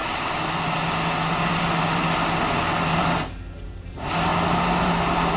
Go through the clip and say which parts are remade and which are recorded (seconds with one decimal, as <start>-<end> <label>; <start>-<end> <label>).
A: 0.0-5.4 recorded